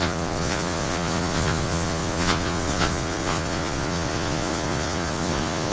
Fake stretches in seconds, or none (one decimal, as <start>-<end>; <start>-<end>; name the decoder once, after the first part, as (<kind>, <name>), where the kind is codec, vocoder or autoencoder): 0.0-5.7 (vocoder, Vocos)